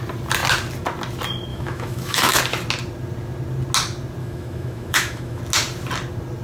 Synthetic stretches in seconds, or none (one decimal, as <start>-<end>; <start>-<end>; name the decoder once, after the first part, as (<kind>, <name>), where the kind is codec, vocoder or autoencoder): 1.5-2.4 (autoencoder, DAC-VAE); 4.2-5.4